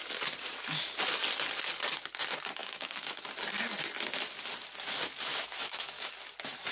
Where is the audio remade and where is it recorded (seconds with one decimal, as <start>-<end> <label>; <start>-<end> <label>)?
0.0-2.6 recorded; 2.6-3.2 remade; 3.2-5.3 recorded; 5.3-6.1 remade; 6.1-6.7 recorded